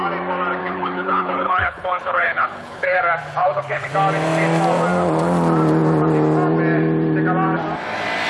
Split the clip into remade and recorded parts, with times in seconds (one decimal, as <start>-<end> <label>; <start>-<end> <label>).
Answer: 0.0-0.6 recorded; 0.6-3.0 remade; 3.0-3.4 recorded; 3.4-3.9 remade; 3.9-8.3 recorded

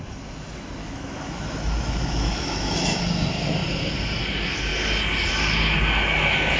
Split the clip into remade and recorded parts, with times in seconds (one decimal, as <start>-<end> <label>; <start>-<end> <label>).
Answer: 0.0-0.8 recorded; 0.8-3.0 remade; 3.0-6.6 recorded

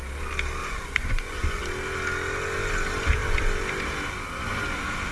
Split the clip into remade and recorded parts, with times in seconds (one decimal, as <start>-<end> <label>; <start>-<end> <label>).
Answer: 0.0-0.6 recorded; 0.6-1.6 remade; 1.6-5.1 recorded

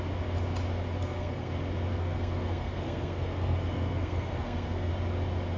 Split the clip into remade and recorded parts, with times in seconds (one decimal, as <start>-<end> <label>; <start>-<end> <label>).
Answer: 0.0-1.0 recorded; 1.0-1.5 remade; 1.5-1.9 recorded; 1.9-4.9 remade; 4.9-5.6 recorded

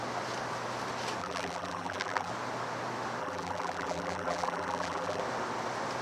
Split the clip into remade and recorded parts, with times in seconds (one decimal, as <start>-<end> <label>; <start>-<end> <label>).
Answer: 0.0-1.2 recorded; 1.2-2.3 remade; 2.3-3.2 recorded; 3.2-5.2 remade; 5.2-6.0 recorded

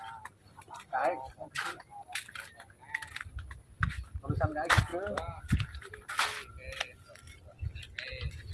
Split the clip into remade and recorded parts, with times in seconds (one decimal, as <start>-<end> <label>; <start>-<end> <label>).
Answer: 0.0-8.5 recorded